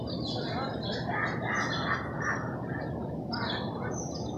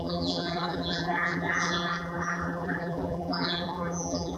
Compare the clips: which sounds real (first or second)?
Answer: first